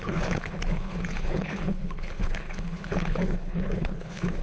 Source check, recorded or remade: remade